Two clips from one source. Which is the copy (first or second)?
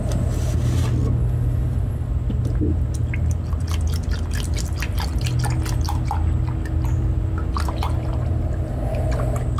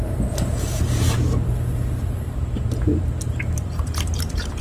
second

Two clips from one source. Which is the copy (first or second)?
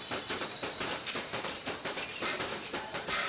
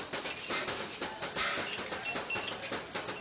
first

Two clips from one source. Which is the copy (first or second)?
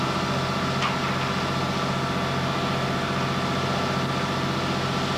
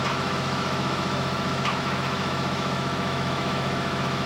second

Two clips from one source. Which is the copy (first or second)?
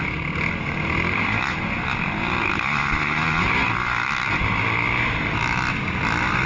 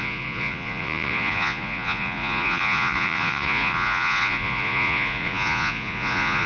second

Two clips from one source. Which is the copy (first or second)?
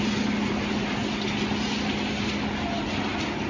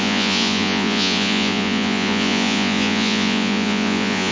second